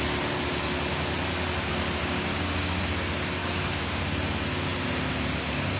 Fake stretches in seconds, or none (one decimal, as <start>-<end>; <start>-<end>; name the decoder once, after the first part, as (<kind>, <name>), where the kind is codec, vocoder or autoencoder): 2.0-2.8 (codec, DAC); 3.4-4.0